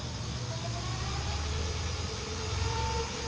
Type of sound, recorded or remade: recorded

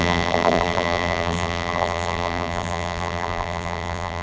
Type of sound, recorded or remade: remade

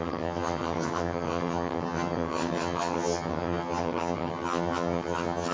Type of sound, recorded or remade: remade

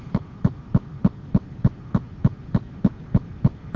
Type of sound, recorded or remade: recorded